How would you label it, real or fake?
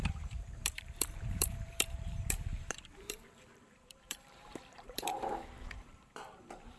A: fake